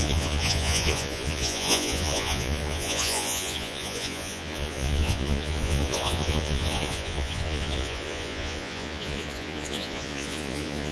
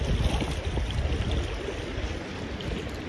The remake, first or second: first